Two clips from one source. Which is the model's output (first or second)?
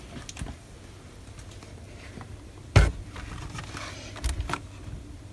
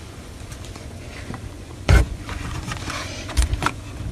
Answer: second